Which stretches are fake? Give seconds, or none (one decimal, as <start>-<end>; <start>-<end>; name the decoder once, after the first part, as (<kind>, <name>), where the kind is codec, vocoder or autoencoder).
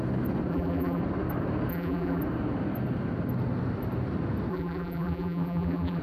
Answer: 0.5-1.0 (vocoder, BigVGAN v2); 1.7-2.2; 4.5-6.0